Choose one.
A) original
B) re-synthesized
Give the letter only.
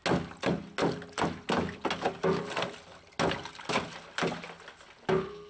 A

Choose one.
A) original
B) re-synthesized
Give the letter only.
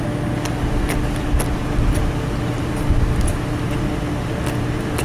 A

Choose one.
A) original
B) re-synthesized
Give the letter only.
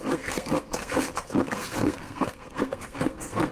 B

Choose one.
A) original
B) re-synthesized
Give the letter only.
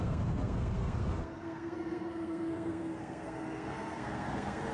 B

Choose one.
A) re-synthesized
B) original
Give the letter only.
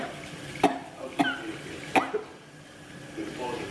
B